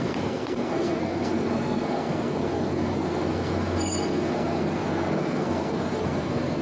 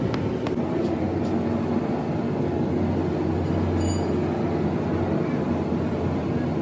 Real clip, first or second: second